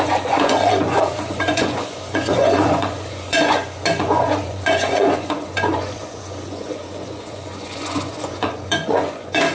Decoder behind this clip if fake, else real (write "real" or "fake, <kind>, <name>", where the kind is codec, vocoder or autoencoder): fake, vocoder, Vocos